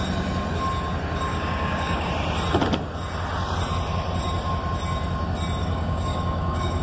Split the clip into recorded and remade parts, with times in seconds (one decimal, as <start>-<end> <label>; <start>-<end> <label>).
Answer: 0.0-1.3 recorded; 1.3-2.1 remade; 2.1-5.6 recorded; 5.6-6.8 remade